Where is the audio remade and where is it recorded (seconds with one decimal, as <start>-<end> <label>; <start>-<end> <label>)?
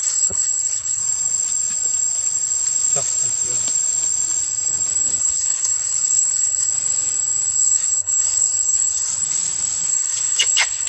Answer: 0.0-1.0 remade; 1.0-5.2 recorded; 5.2-6.7 remade; 6.7-7.5 recorded; 7.5-9.1 remade; 9.1-9.9 recorded; 9.9-10.9 remade